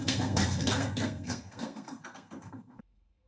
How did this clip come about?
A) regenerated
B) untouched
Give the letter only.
A